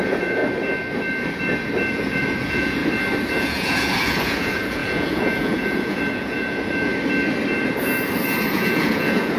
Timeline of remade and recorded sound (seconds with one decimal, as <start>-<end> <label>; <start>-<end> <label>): 0.0-0.4 remade; 0.4-1.9 recorded; 1.9-2.8 remade; 2.8-3.3 recorded; 3.3-6.9 remade; 6.9-8.5 recorded; 8.5-9.4 remade

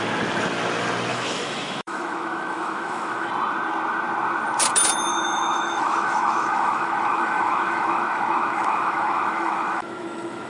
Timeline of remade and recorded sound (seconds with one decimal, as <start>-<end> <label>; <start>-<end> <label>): 0.0-1.1 recorded; 1.1-3.3 remade; 3.3-5.1 recorded; 5.1-10.5 remade

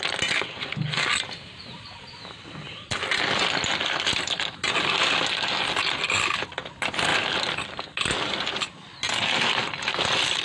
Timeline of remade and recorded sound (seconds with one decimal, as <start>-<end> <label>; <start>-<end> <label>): 0.0-10.4 recorded